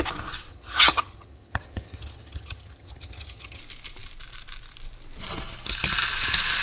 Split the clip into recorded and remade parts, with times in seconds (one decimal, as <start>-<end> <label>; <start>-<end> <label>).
0.0-0.5 recorded; 0.5-3.6 remade; 3.6-6.6 recorded